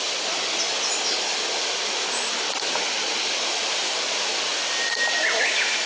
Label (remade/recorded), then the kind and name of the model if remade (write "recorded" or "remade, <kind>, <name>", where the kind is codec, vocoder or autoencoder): recorded